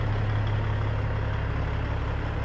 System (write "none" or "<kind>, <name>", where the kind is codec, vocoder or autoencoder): none